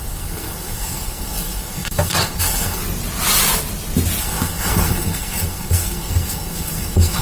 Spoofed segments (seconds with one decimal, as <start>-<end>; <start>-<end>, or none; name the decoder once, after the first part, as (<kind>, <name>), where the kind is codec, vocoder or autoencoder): 0.0-2.8 (codec, SNAC); 4.2-7.2